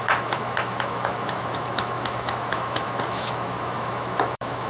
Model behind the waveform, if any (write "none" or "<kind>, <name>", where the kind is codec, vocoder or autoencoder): autoencoder, DAC-VAE